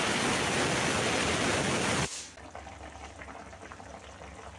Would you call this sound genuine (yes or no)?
yes